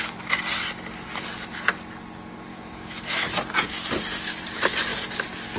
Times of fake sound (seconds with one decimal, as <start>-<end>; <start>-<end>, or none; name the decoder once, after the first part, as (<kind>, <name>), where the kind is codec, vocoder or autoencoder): 2.5-3.3 (autoencoder, DAC-VAE)